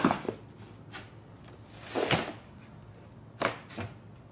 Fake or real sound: real